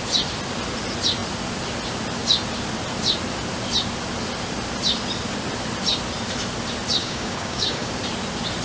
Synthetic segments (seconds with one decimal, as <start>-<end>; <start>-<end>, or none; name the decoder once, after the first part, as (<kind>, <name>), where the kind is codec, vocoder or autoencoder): 7.0-7.9 (codec, DAC)